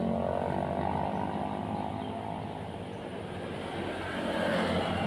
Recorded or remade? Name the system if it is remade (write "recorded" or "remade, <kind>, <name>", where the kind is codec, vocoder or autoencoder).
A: recorded